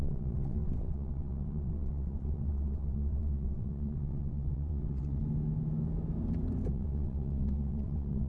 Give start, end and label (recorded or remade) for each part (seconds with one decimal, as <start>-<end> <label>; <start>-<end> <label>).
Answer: 0.0-5.2 remade; 5.2-6.7 recorded; 6.7-8.3 remade